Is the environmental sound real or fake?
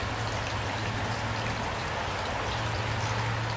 real